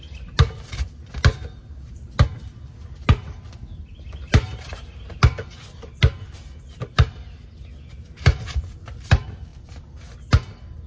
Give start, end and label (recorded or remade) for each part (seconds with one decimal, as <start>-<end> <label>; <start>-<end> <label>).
0.0-10.9 recorded

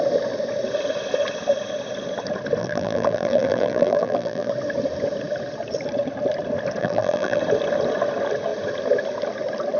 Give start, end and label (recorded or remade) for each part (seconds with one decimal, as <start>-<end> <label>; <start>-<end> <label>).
0.0-2.6 recorded; 2.6-4.5 remade; 4.5-6.8 recorded; 6.8-7.4 remade; 7.4-9.8 recorded

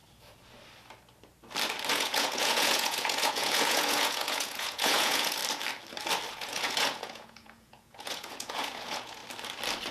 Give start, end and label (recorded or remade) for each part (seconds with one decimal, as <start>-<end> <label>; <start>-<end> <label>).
0.0-1.9 recorded; 1.9-5.4 remade; 5.4-6.3 recorded; 6.3-9.2 remade; 9.2-9.9 recorded

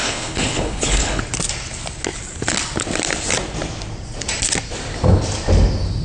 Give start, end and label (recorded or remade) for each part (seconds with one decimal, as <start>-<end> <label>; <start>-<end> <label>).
0.0-1.2 remade; 1.2-6.0 recorded

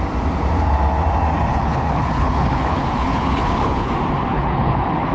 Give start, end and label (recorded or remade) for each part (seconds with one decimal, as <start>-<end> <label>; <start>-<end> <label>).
0.0-1.5 recorded; 1.5-3.9 remade; 3.9-4.3 recorded; 4.3-5.1 remade

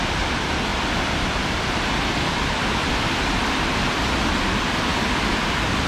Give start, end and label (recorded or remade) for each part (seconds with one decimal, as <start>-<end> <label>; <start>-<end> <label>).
0.0-0.7 recorded; 0.7-4.2 remade; 4.2-5.9 recorded